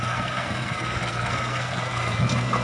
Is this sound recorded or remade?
remade